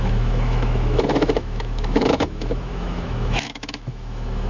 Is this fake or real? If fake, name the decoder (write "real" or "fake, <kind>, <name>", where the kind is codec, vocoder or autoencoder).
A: fake, autoencoder, DAC-VAE